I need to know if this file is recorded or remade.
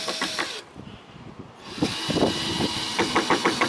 recorded